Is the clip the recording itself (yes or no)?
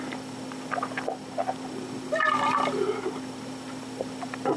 yes